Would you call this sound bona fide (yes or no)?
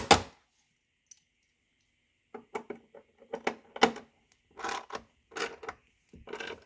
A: yes